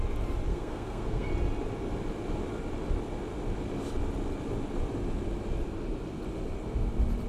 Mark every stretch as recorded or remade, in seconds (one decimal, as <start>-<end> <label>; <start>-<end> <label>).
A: 0.0-0.5 recorded; 0.5-1.3 remade; 1.3-7.3 recorded